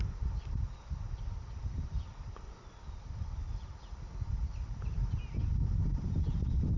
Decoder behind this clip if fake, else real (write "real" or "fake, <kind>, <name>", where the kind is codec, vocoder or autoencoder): real